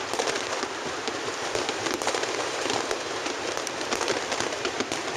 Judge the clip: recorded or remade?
recorded